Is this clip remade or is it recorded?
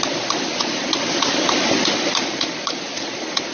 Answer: recorded